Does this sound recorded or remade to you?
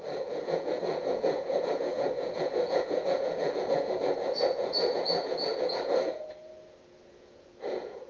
remade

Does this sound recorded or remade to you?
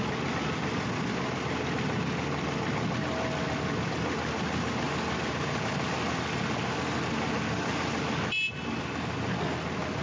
recorded